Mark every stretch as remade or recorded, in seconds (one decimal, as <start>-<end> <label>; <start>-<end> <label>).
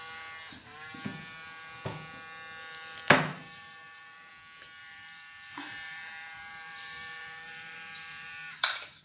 0.0-3.3 recorded; 3.3-4.3 remade; 4.3-4.8 recorded; 4.8-9.0 remade